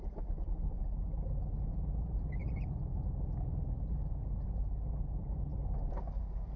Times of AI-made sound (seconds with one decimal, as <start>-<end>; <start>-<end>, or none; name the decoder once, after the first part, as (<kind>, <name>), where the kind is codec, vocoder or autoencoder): none

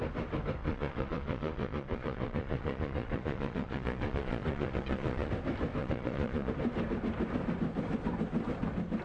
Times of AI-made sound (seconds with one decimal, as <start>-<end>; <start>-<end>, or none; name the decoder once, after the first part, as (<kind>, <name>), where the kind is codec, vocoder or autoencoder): 0.6-5.3 (vocoder, Vocos); 5.8-6.5

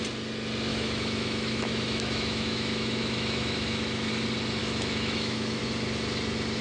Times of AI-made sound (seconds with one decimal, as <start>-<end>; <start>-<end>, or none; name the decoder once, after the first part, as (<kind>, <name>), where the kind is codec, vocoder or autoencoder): 0.7-4.1 (autoencoder, DAC-VAE); 4.6-5.6